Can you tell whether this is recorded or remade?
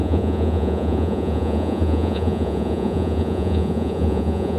remade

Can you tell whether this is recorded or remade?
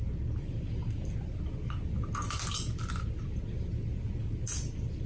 recorded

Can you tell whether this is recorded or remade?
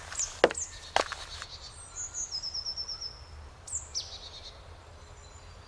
recorded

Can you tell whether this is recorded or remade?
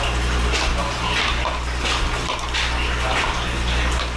recorded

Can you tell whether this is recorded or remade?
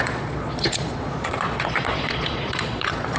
remade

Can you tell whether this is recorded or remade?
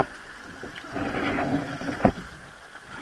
remade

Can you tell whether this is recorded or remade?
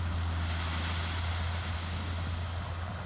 recorded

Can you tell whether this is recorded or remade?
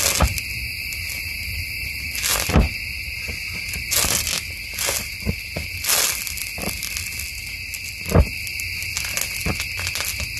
recorded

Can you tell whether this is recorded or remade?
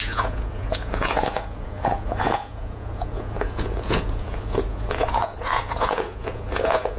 remade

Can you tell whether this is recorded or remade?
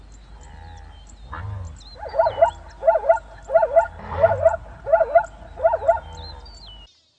recorded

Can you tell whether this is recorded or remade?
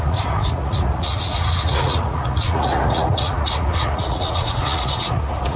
remade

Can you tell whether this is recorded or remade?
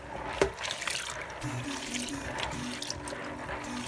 recorded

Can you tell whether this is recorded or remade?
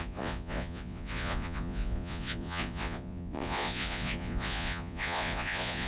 remade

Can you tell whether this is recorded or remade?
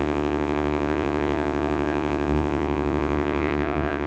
remade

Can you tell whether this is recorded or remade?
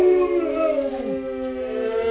recorded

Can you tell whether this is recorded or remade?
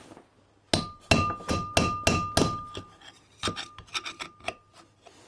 recorded